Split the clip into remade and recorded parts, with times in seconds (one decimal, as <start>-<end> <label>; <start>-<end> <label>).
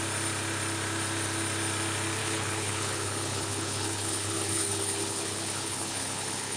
0.0-2.2 recorded; 2.2-6.6 remade